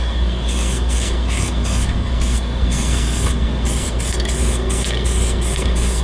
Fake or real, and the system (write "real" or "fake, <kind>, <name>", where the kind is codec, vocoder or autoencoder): fake, codec, SNAC